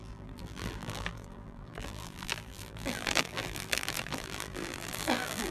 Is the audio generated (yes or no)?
yes